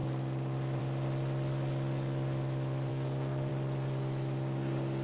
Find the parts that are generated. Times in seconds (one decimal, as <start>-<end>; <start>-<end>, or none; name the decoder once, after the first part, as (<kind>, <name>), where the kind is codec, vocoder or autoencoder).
2.9-3.5 (codec, SNAC)